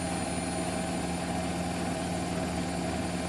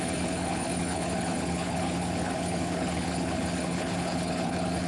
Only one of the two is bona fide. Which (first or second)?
first